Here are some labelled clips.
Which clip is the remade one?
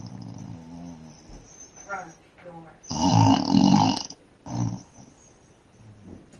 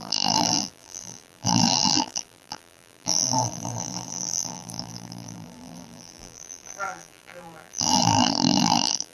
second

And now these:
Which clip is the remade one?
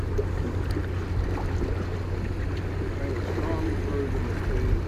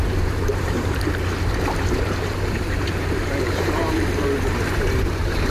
second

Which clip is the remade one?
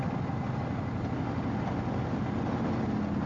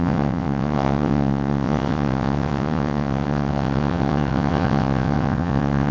second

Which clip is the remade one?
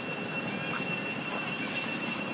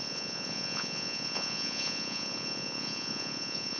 second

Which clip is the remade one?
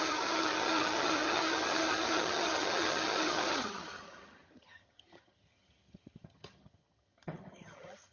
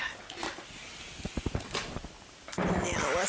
first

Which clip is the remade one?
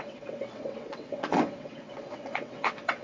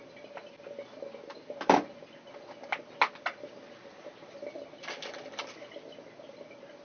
first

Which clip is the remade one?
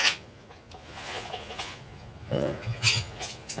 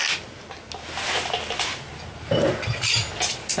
first